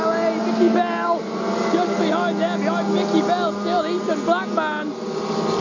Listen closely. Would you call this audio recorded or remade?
recorded